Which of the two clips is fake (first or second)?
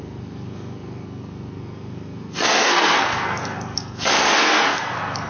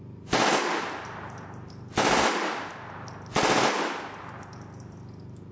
first